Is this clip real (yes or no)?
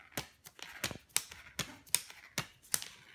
yes